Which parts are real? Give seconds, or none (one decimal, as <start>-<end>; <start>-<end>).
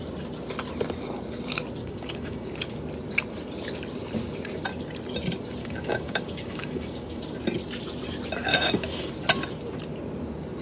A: 0.0-1.8; 2.5-5.6; 7.2-8.5; 9.1-10.6